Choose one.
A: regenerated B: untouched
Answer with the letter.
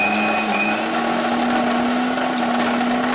B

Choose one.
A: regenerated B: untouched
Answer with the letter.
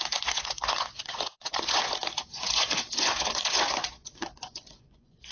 A